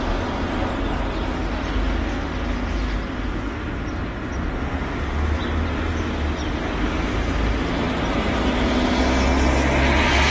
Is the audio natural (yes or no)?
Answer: yes